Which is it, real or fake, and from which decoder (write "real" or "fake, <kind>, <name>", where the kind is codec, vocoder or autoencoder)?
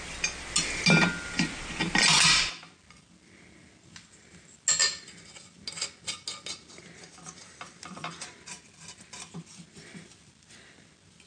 real